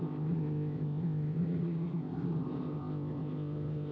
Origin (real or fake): fake